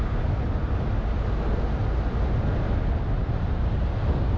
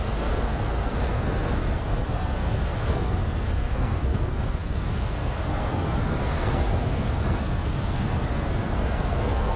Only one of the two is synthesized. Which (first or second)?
second